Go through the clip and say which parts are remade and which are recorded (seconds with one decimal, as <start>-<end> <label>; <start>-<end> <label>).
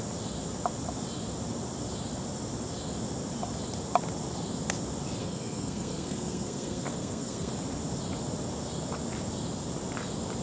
0.0-5.2 recorded; 5.2-7.5 remade; 7.5-10.4 recorded